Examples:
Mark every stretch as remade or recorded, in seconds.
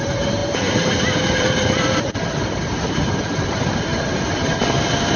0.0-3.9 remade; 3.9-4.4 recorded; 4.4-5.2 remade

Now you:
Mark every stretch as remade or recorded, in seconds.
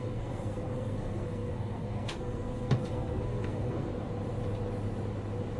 0.0-3.9 remade; 3.9-5.6 recorded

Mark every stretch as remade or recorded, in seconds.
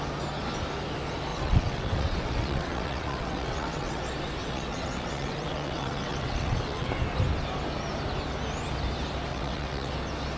0.0-1.3 recorded; 1.3-4.0 remade; 4.0-4.4 recorded; 4.4-6.9 remade; 6.9-9.3 recorded; 9.3-9.9 remade; 9.9-10.4 recorded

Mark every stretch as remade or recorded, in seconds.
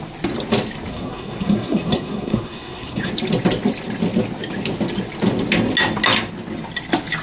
0.0-0.9 recorded; 0.9-3.1 remade; 3.1-7.2 recorded